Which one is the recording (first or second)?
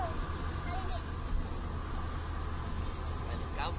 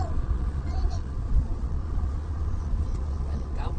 first